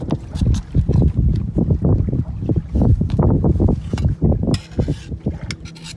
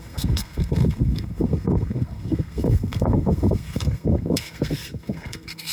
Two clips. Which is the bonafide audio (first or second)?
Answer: first